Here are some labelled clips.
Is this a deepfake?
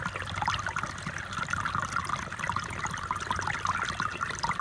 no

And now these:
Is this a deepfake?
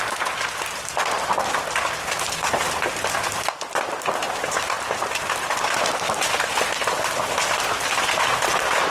no